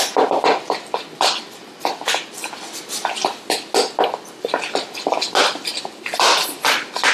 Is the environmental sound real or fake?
real